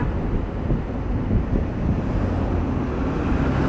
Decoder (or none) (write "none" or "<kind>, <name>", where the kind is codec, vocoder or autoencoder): none